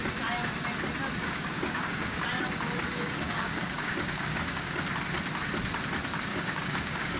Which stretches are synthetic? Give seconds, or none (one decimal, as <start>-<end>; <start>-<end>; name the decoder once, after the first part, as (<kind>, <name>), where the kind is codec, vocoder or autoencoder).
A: 1.2-2.2 (codec, DAC); 2.9-4.8; 6.3-7.2